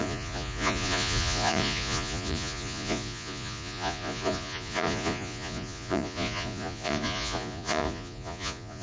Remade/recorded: remade